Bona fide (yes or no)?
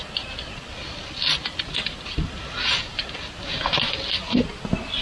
yes